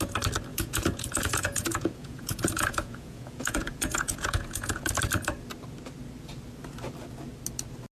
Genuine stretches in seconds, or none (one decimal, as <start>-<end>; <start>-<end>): 0.0-0.5; 4.9-7.9